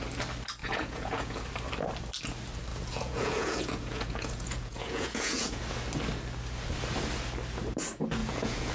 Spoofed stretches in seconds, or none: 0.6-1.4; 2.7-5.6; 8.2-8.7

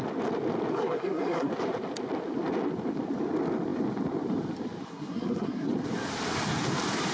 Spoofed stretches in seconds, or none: 0.7-1.5; 4.9-5.7

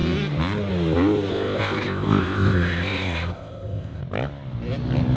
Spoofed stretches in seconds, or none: 1.3-4.0

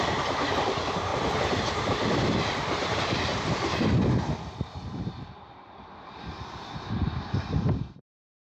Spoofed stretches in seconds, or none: 0.0-1.1; 1.6-8.6

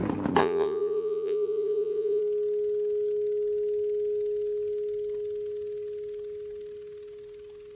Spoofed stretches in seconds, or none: 0.4-2.2

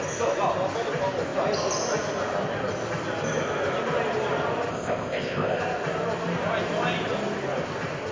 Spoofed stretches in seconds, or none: 4.7-5.6

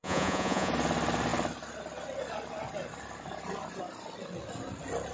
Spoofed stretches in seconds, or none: 0.0-0.7